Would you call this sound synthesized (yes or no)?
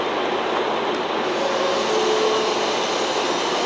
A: no